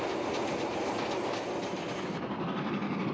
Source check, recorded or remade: recorded